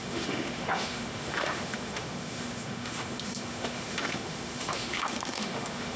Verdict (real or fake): fake